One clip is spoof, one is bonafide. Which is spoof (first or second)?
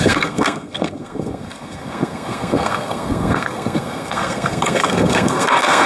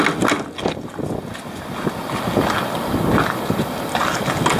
first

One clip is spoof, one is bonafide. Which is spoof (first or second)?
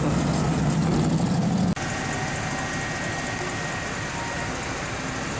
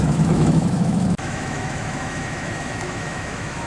second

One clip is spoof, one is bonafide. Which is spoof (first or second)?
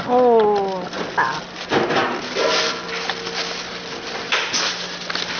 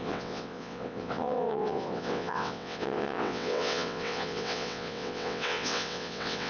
second